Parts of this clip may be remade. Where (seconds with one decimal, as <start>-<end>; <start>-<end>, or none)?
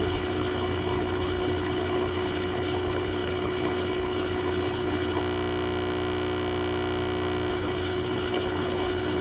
0.0-5.2; 7.5-9.2